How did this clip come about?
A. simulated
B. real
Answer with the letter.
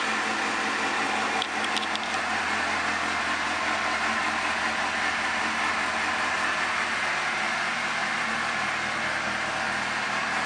B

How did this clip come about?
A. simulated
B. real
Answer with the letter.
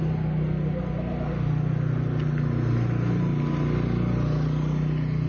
B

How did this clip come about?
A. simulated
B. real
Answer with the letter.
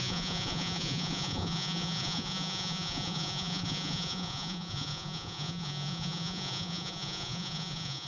A